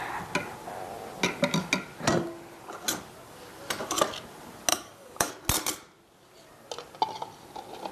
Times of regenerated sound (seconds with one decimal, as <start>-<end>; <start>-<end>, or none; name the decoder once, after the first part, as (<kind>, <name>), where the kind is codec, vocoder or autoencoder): 4.7-5.3 (codec, DAC)